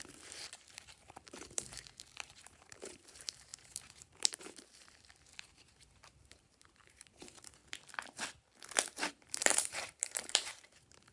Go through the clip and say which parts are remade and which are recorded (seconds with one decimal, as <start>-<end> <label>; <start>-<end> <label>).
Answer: 0.0-7.6 remade; 7.6-9.1 recorded; 9.1-11.1 remade